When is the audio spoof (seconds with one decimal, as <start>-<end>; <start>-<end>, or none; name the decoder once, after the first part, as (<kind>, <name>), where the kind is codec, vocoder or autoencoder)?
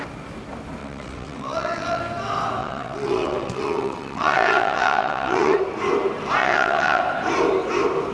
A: 0.8-2.0 (vocoder, WaveNeXt); 2.6-5.6; 6.4-7.0